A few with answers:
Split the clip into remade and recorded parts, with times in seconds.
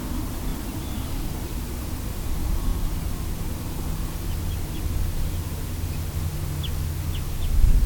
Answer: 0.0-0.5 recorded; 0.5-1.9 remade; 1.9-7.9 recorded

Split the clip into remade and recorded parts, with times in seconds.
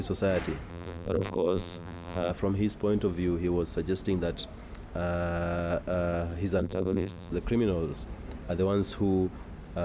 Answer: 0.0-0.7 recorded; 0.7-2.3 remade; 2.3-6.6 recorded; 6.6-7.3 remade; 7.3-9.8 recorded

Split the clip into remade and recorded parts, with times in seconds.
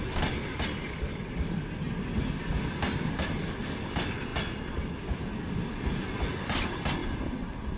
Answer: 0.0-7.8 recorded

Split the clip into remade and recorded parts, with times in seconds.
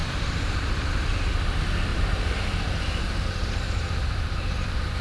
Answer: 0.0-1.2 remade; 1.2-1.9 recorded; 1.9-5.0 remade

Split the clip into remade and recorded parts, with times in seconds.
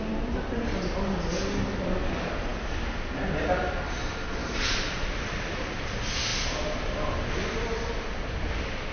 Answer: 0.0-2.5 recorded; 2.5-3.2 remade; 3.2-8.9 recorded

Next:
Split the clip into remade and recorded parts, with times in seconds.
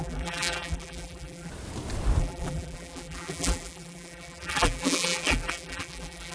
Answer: 0.0-1.5 remade; 1.5-2.2 recorded; 2.2-6.3 remade